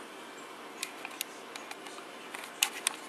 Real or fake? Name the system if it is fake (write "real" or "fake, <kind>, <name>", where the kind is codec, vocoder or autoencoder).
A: real